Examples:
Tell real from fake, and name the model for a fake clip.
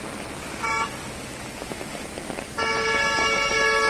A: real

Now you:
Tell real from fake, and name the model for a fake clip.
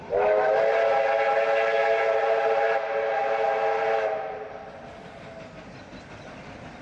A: real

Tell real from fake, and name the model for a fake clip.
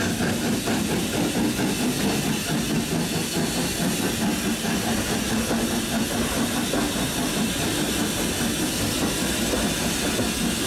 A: real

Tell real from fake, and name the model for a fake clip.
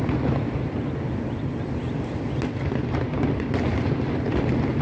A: real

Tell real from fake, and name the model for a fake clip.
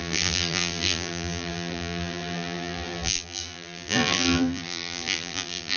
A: fake, vocoder, BigVGAN v2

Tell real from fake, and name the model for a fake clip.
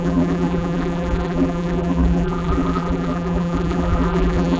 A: fake, vocoder, BigVGAN v2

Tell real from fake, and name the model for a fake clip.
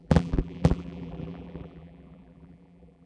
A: fake, vocoder, BigVGAN v2